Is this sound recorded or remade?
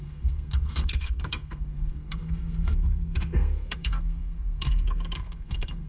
remade